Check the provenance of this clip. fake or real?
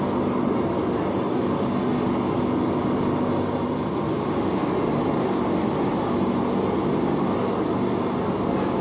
real